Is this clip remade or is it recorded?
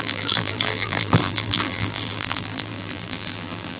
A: remade